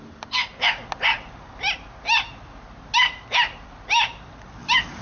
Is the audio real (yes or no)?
yes